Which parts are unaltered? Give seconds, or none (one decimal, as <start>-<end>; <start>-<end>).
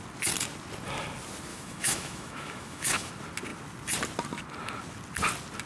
0.0-1.5; 3.1-5.7